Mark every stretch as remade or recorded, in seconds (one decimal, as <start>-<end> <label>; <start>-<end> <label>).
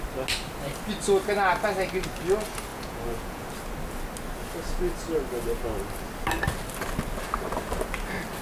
0.0-2.7 recorded; 2.7-3.4 remade; 3.4-8.4 recorded